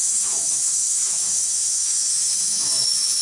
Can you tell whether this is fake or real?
fake